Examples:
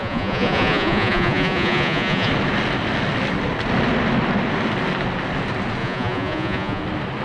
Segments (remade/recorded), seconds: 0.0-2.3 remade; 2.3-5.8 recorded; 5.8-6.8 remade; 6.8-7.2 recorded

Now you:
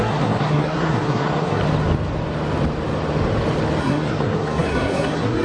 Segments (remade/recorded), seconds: 0.0-1.6 remade; 1.6-3.8 recorded; 3.8-5.4 remade